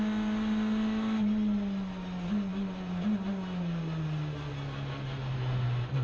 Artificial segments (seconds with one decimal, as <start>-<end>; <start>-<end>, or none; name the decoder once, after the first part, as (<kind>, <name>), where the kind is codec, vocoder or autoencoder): none